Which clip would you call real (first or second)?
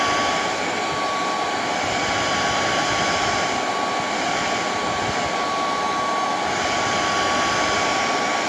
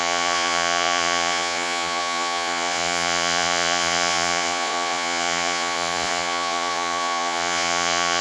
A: first